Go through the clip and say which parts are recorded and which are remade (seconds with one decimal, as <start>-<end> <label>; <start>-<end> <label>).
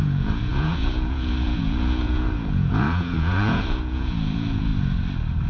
0.0-4.7 remade; 4.7-5.5 recorded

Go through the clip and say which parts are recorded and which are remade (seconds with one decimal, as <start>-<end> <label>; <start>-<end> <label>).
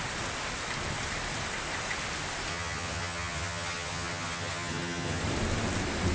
0.0-2.5 recorded; 2.5-5.2 remade; 5.2-6.1 recorded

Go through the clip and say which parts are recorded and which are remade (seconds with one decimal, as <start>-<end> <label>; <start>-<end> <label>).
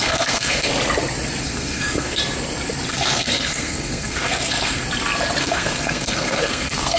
0.0-0.7 remade; 0.7-1.4 recorded; 1.4-2.2 remade; 2.2-2.9 recorded; 2.9-4.8 remade; 4.8-5.4 recorded; 5.4-7.0 remade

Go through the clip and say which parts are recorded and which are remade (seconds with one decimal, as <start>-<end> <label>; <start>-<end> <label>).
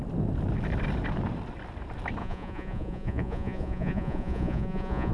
0.0-2.2 recorded; 2.2-5.1 remade